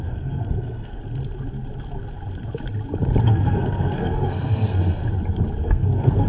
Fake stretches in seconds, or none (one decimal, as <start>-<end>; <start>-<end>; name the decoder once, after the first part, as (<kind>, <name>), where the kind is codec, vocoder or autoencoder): 0.0-1.0 (codec, SNAC); 3.2-4.8; 5.6-6.3